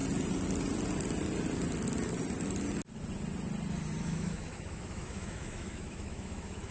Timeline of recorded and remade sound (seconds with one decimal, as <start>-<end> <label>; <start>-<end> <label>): 0.0-4.0 recorded; 4.0-6.7 remade

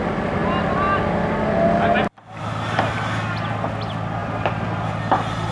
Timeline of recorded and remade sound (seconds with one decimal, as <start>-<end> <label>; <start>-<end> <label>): 0.0-4.2 recorded; 4.2-4.9 remade; 4.9-5.5 recorded

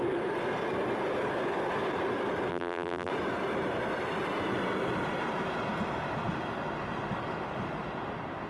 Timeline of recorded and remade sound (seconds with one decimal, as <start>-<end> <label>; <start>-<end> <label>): 0.0-2.5 recorded; 2.5-3.1 remade; 3.1-8.5 recorded

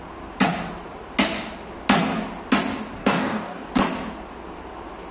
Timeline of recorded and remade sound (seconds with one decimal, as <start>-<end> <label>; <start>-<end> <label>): 0.0-3.0 recorded; 3.0-3.7 remade; 3.7-5.1 recorded